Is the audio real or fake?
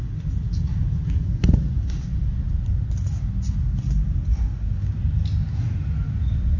real